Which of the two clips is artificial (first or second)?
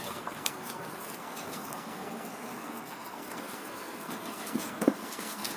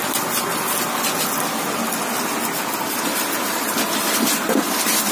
first